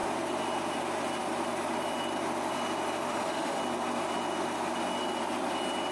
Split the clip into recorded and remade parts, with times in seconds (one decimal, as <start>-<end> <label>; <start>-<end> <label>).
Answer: 0.0-3.1 recorded; 3.1-3.6 remade; 3.6-5.9 recorded